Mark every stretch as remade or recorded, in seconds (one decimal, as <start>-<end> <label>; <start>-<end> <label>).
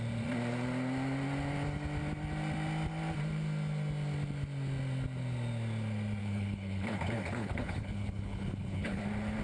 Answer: 0.0-6.2 recorded; 6.2-9.0 remade; 9.0-9.4 recorded